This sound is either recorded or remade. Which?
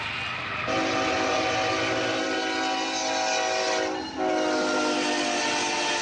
recorded